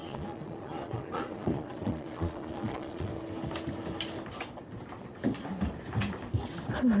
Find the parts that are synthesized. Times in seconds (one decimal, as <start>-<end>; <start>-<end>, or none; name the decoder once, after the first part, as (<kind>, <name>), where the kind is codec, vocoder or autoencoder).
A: 0.0-3.1 (vocoder, Vocos)